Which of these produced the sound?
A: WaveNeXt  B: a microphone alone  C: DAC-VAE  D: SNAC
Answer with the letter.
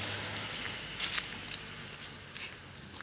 B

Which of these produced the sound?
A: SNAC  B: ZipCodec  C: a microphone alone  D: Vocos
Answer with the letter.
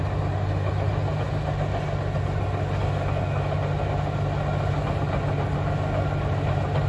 C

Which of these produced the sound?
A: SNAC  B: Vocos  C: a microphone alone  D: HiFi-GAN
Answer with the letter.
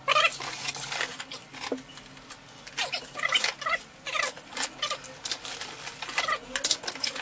C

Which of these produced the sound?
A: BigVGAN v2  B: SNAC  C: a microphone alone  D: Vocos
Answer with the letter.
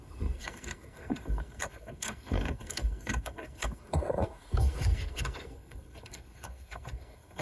B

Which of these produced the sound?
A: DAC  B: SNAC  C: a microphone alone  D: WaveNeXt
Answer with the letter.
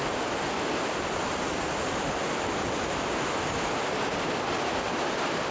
C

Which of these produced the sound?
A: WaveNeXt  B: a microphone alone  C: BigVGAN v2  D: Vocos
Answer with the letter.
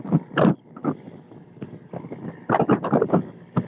B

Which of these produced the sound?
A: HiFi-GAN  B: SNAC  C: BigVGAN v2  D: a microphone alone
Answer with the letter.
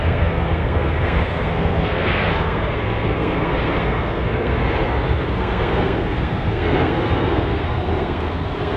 B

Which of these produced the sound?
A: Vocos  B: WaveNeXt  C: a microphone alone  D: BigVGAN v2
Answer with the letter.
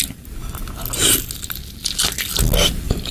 C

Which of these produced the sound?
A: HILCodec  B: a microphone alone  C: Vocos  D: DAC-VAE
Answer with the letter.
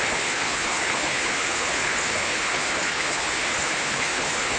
A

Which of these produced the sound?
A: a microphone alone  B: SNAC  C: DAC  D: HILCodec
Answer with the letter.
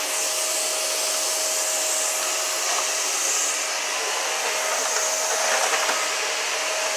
A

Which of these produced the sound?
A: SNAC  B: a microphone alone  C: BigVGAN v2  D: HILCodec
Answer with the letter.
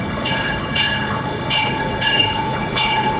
D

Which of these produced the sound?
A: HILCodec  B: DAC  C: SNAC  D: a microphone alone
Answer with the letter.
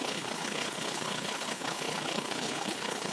A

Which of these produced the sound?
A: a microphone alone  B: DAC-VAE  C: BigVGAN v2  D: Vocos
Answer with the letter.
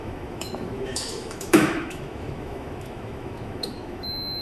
B